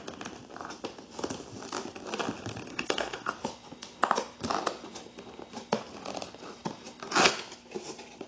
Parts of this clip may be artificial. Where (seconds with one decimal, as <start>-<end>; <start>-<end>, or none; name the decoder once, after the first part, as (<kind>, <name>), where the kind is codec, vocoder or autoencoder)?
2.7-3.3 (codec, SNAC)

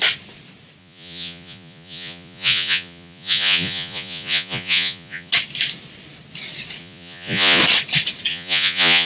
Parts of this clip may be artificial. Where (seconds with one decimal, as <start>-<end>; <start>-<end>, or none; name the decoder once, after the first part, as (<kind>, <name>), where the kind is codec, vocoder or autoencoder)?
0.8-5.3 (vocoder, Vocos); 6.8-7.6; 8.3-9.1